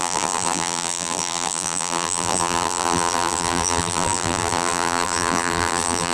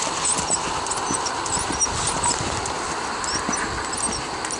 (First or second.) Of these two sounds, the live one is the second